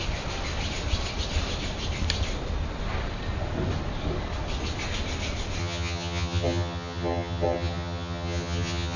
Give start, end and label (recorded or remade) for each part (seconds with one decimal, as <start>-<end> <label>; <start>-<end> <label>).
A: 0.0-5.6 recorded; 5.6-9.0 remade

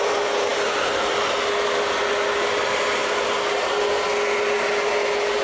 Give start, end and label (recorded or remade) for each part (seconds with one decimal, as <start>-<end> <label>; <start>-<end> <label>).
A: 0.0-5.4 recorded

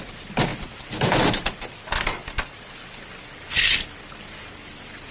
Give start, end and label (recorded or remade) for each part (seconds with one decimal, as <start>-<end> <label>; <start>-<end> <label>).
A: 0.0-5.1 recorded